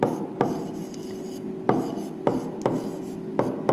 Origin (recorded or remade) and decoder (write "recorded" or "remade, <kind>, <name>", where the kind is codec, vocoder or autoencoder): recorded